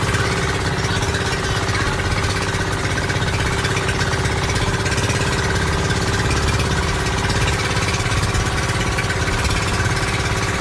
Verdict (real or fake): real